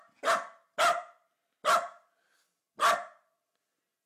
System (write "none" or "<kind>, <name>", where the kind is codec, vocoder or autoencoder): none